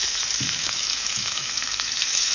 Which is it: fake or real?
fake